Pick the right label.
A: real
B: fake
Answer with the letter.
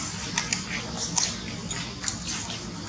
A